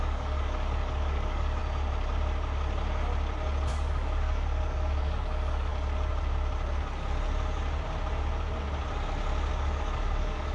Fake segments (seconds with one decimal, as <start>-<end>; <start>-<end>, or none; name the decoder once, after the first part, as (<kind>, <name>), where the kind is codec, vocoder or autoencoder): 0.0-1.6 (codec, DAC); 3.7-5.7; 9.5-10.5

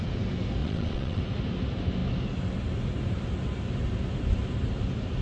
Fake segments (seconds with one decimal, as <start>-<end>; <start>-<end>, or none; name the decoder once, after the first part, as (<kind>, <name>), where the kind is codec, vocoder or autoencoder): 0.6-1.2 (vocoder, WaveNeXt)

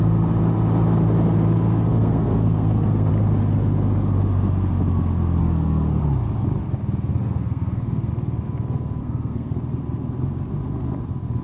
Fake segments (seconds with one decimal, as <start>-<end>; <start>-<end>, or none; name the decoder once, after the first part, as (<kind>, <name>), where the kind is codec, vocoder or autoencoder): 1.9-3.1 (codec, SNAC); 5.4-6.0; 7.1-8.1; 9.0-9.6

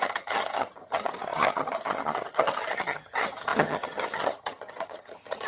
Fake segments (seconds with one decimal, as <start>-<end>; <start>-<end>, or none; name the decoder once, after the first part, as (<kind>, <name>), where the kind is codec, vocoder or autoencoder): 0.0-5.5 (vocoder, HiFi-GAN)